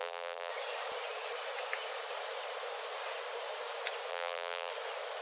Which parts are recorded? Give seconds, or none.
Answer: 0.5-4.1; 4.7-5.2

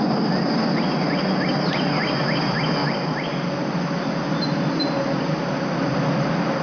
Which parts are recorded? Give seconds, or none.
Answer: 0.0-6.6